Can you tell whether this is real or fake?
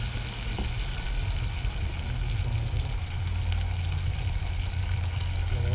real